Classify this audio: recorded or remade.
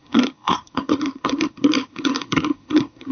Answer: remade